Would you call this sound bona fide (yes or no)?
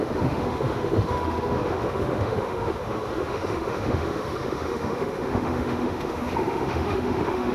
no